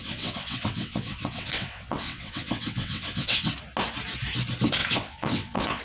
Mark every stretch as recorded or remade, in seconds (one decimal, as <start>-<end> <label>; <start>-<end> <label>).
0.0-3.5 remade; 3.5-4.8 recorded; 4.8-5.8 remade